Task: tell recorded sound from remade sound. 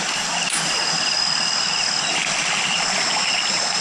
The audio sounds recorded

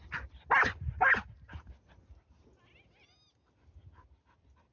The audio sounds recorded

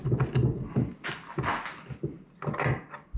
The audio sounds recorded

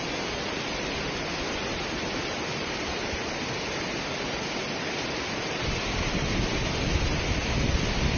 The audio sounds recorded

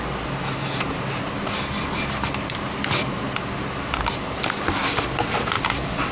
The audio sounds recorded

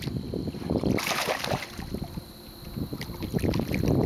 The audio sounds recorded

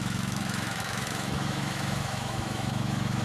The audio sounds remade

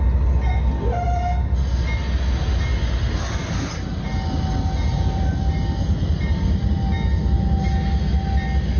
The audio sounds recorded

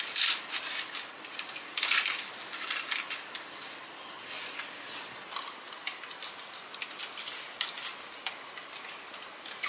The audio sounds recorded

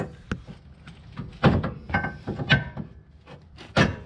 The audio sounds recorded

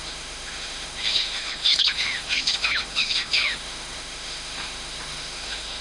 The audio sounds remade